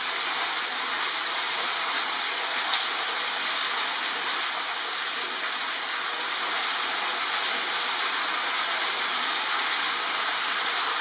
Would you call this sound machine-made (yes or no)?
no